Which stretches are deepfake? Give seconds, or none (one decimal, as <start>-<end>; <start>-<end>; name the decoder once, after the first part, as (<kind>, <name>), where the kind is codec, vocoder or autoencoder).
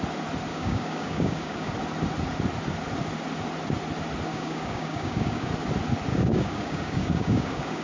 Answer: 0.5-1.7 (codec, DAC); 4.3-5.5; 6.1-7.8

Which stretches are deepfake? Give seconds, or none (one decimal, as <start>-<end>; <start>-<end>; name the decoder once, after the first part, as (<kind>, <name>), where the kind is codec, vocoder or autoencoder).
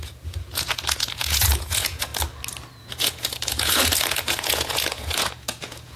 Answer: 0.0-2.1 (vocoder, Vocos); 2.8-6.0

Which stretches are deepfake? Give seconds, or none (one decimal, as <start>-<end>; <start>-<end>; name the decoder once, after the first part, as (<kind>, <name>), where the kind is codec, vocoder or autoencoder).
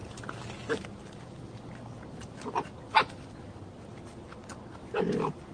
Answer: none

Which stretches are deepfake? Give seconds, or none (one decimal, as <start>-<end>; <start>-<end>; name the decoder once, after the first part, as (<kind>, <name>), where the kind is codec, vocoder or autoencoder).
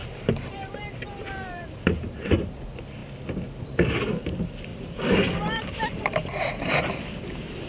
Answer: 0.0-2.5 (vocoder, BigVGAN v2); 4.7-6.7